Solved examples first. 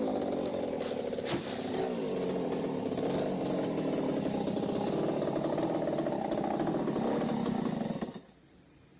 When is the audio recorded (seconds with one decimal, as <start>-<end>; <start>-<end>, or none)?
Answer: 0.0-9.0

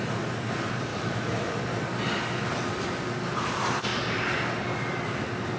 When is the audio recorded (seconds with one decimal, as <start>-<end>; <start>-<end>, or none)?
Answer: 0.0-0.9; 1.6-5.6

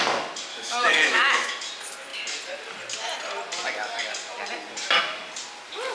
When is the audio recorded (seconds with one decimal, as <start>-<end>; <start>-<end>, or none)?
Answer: 0.0-0.5; 1.5-5.9

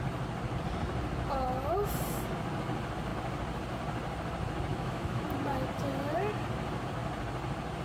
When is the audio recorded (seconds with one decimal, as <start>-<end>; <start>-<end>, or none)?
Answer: 0.0-4.7; 5.3-7.8

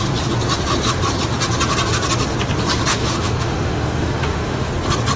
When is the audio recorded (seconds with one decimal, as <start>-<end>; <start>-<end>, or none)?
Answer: 0.0-2.9; 4.7-5.2

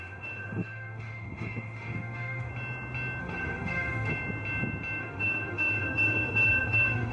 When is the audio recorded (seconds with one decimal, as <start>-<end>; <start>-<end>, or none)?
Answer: 2.5-3.2; 4.1-5.0

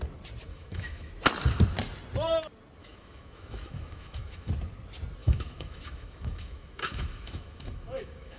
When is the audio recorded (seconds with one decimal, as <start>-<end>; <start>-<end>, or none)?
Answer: 0.0-0.5; 1.1-2.8; 4.5-5.2